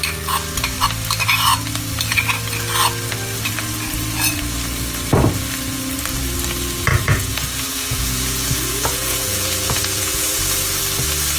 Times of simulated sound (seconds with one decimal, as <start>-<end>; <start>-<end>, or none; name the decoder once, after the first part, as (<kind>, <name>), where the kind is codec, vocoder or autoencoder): 6.9-10.8 (vocoder, Vocos)